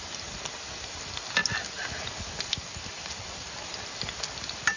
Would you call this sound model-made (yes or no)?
no